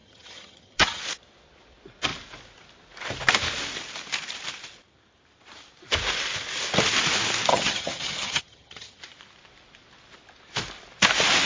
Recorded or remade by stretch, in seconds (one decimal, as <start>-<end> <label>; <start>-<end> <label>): 0.0-1.0 remade; 1.0-7.5 recorded; 7.5-9.0 remade; 9.0-11.4 recorded